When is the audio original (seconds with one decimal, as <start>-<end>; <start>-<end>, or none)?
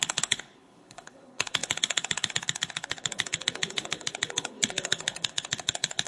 none